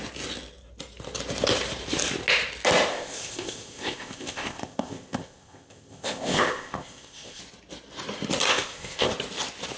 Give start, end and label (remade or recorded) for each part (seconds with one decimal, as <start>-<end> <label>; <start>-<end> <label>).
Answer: 0.0-2.9 recorded; 2.9-7.4 remade; 7.4-8.5 recorded; 8.5-9.1 remade; 9.1-9.8 recorded